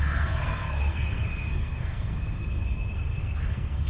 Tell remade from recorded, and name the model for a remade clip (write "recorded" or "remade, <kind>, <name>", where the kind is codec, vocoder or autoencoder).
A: remade, codec, SNAC